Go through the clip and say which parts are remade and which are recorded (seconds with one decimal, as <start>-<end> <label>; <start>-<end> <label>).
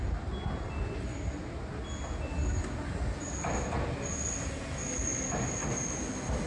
0.0-6.5 recorded